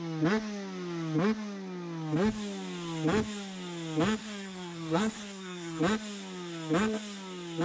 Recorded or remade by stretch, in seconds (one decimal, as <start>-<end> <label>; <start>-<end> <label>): 0.0-4.2 recorded; 4.2-5.8 remade; 5.8-7.6 recorded